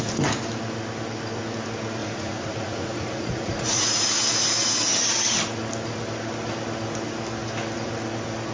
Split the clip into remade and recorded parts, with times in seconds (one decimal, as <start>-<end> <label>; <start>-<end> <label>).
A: 0.0-2.0 recorded; 2.0-4.2 remade; 4.2-8.5 recorded